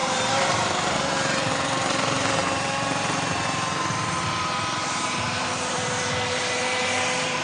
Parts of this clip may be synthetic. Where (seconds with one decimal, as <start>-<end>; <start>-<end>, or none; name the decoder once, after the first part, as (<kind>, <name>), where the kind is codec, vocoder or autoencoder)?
0.0-7.4 (vocoder, BigVGAN v2)